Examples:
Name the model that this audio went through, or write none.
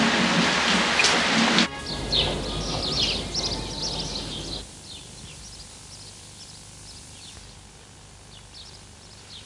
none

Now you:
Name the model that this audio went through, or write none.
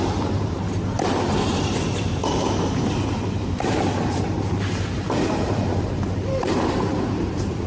vocoder, BigVGAN v2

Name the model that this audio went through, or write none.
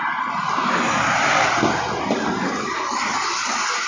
none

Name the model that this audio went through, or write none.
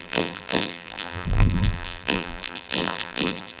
vocoder, BigVGAN v2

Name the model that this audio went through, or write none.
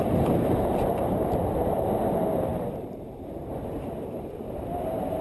vocoder, BigVGAN v2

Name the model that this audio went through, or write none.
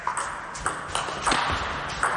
none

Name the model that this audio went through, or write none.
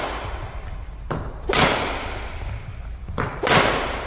none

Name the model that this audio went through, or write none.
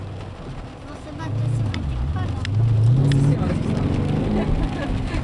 none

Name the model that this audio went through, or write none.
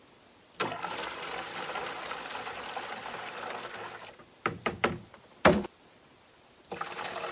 none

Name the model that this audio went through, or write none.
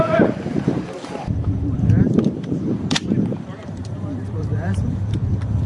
vocoder, BigVGAN v2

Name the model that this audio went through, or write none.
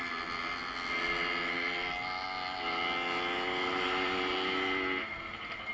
none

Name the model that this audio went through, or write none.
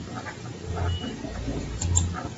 vocoder, BigVGAN v2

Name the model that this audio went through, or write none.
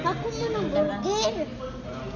none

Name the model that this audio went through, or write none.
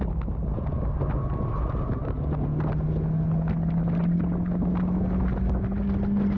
none